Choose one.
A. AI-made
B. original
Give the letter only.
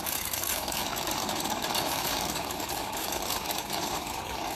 A